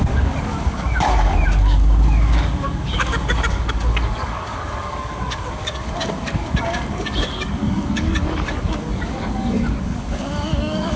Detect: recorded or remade remade